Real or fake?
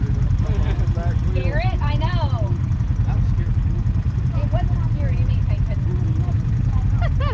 real